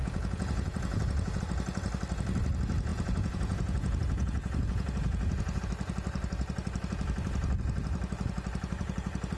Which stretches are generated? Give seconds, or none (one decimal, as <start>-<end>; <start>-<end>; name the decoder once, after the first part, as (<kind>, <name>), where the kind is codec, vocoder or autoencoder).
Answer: 0.0-1.4 (vocoder, Vocos); 2.9-5.6